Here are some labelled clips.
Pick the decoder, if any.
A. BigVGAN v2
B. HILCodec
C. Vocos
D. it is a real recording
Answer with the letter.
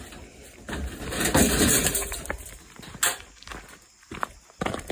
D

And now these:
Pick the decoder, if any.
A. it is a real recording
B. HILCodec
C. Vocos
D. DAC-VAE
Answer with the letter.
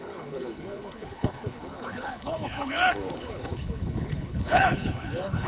B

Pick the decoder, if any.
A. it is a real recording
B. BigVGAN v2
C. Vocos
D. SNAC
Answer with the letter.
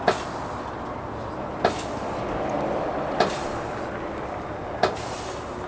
A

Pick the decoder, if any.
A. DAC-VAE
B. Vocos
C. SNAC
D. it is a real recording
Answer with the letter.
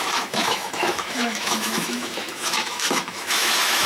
A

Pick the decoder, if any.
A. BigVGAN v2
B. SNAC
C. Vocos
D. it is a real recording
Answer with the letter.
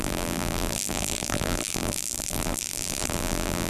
A